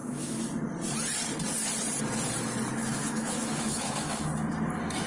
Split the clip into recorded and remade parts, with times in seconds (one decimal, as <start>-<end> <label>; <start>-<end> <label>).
0.0-0.5 remade; 0.5-2.8 recorded; 2.8-4.3 remade; 4.3-5.1 recorded